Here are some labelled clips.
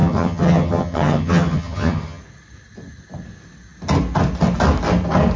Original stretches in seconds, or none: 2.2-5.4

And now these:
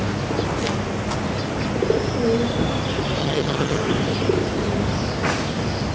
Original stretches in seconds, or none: 0.0-3.2; 3.8-5.9

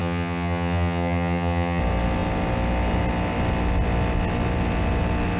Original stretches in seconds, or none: 1.8-5.4

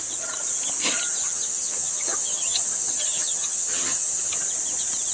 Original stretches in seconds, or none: 0.0-1.2; 4.3-5.1

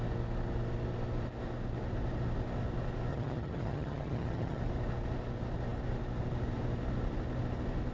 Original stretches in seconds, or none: 0.0-3.1; 4.6-7.9

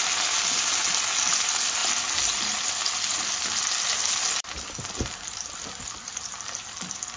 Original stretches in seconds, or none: 0.0-7.2

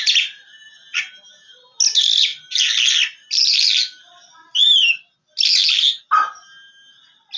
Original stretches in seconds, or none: 0.0-7.4